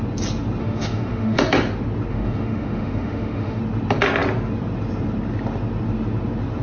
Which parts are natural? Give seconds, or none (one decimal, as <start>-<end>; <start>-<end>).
0.0-0.6; 1.4-2.1; 3.6-6.6